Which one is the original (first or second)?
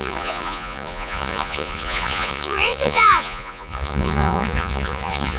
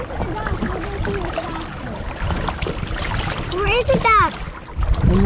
second